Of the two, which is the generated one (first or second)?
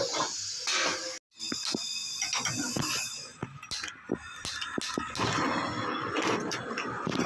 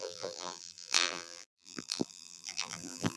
second